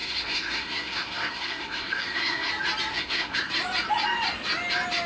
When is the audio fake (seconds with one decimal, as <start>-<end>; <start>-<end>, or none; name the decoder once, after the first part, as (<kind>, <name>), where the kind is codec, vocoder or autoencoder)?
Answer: 0.0-2.5 (codec, SNAC); 2.9-3.5